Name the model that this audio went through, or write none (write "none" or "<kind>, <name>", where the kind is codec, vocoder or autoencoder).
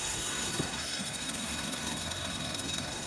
codec, SNAC